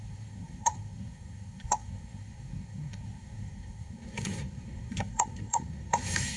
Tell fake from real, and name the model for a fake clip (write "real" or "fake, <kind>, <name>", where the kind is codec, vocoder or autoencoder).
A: fake, codec, SNAC